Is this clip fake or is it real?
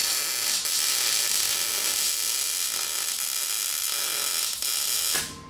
real